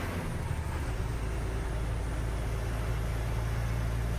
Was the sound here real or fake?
real